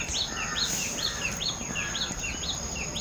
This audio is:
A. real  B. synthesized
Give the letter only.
A